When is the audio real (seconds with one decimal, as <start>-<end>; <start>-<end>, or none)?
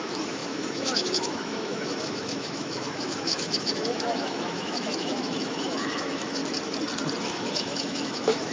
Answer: 6.4-7.2